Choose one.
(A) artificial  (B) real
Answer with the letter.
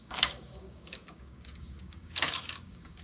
A